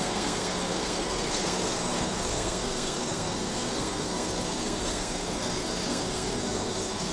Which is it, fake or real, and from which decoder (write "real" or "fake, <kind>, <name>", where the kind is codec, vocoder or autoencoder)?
fake, codec, SNAC